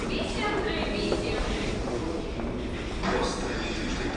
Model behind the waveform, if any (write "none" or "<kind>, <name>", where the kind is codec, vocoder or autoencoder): none